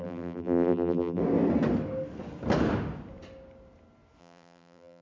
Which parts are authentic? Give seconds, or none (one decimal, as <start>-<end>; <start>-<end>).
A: 1.2-4.2

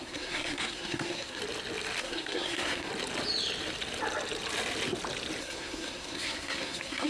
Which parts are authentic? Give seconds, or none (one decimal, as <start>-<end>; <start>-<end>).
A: 1.4-2.0; 2.9-5.4

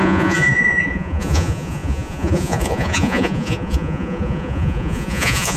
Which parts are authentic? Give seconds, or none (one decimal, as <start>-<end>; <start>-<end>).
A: none

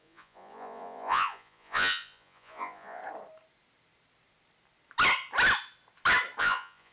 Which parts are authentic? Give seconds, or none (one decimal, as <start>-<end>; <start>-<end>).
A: 3.0-6.4

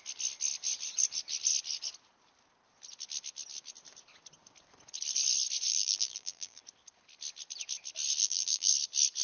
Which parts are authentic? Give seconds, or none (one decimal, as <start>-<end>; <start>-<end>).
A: 0.0-5.7; 6.6-8.2; 8.7-9.2